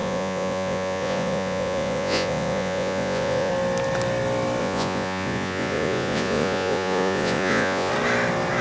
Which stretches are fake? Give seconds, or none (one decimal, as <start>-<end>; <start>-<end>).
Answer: 0.0-3.5; 4.6-7.9